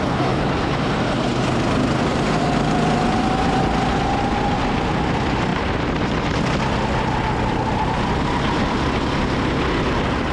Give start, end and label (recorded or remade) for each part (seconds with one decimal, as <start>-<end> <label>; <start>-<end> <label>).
0.0-2.1 recorded; 2.1-2.7 remade; 2.7-10.3 recorded